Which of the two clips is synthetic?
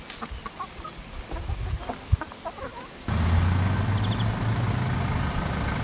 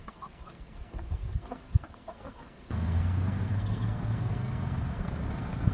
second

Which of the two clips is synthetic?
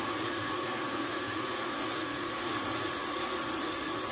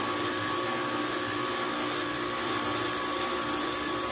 first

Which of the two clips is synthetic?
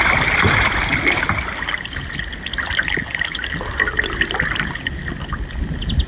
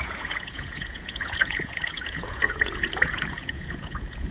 second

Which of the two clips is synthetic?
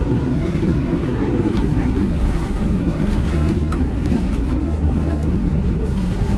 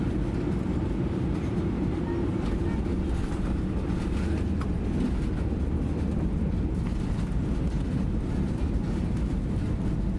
first